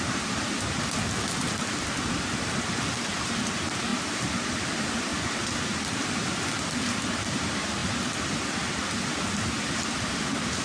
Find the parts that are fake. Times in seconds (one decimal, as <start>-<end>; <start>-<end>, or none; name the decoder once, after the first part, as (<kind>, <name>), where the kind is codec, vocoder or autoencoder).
0.0-5.1 (vocoder, BigVGAN v2); 5.9-7.8; 9.0-10.6